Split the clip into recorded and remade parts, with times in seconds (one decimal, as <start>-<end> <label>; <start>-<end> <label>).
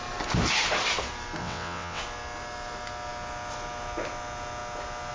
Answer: 0.0-1.4 recorded; 1.4-2.0 remade; 2.0-5.1 recorded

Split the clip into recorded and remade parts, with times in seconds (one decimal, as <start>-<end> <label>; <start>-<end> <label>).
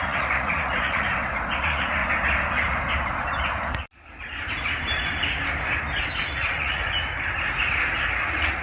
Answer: 0.0-1.1 remade; 1.1-1.6 recorded; 1.6-2.0 remade; 2.0-6.3 recorded; 6.3-6.8 remade; 6.8-8.1 recorded; 8.1-8.6 remade